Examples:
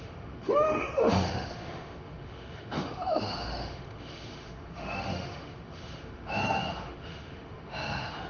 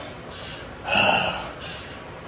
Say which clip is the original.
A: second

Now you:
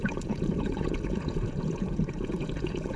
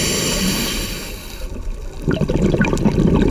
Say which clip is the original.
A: second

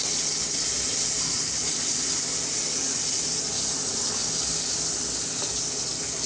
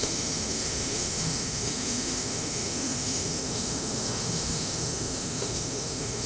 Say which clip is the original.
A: first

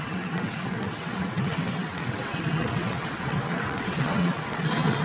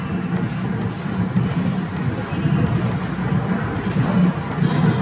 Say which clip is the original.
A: second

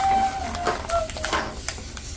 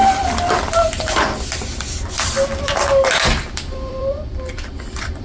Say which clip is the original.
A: first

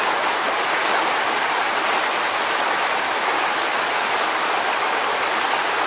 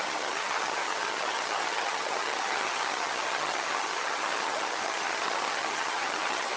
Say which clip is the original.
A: first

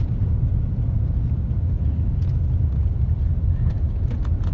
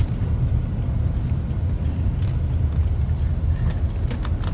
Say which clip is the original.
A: second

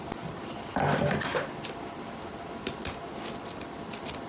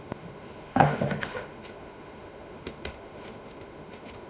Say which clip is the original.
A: first